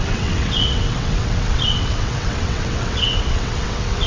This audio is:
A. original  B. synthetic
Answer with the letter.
B